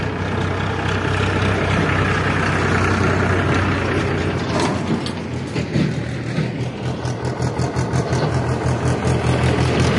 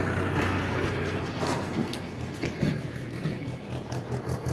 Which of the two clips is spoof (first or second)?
second